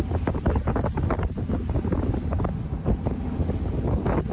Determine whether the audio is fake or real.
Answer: real